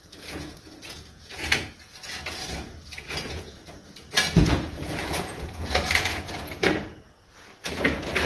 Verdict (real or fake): fake